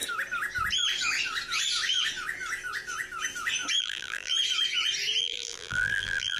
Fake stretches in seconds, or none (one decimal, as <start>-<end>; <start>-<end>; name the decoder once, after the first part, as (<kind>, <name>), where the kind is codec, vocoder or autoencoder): 3.8-4.3 (vocoder, BigVGAN v2); 5.2-6.4